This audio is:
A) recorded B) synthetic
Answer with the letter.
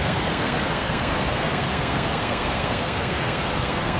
B